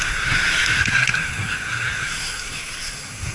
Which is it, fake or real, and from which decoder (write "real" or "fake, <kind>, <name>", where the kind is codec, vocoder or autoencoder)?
fake, codec, SNAC